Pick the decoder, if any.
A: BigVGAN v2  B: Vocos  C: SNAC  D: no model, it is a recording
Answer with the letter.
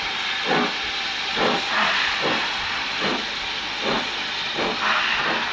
D